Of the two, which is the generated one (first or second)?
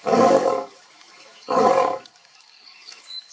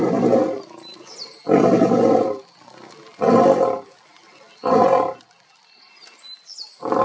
first